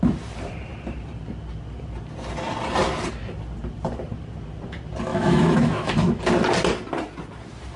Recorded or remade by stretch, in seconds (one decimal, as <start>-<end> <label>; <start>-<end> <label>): 0.0-5.1 recorded; 5.1-6.2 remade; 6.2-7.8 recorded